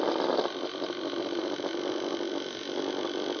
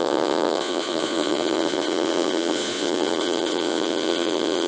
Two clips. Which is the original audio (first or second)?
first